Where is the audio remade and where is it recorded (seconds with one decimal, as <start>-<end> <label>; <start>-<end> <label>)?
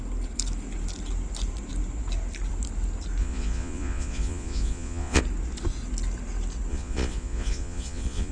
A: 0.0-3.2 recorded; 3.2-5.2 remade; 5.2-6.7 recorded; 6.7-8.3 remade